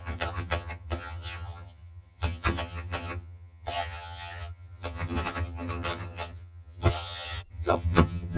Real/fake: fake